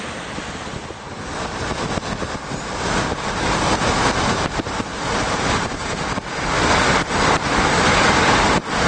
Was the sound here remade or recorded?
recorded